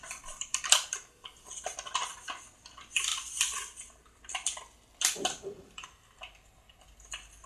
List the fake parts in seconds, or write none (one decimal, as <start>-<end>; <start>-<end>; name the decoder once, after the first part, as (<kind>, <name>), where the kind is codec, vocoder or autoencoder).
none